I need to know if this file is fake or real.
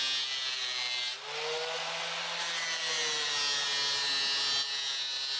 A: real